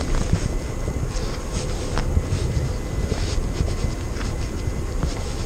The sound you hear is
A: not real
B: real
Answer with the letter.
B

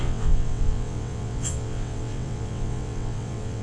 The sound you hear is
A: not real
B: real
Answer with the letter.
A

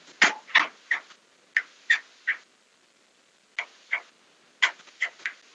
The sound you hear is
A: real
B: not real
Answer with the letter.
A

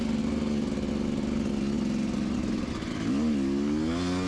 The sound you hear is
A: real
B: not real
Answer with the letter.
A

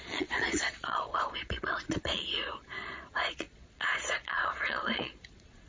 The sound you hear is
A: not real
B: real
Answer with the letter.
A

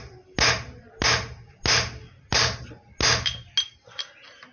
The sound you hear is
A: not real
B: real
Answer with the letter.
B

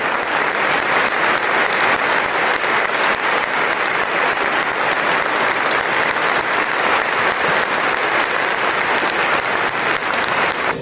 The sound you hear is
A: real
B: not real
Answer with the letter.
A